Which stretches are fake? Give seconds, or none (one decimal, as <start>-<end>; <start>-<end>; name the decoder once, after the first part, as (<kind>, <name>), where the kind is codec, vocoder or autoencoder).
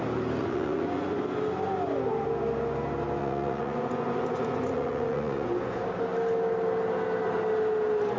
0.4-1.2 (vocoder, Vocos); 3.2-5.8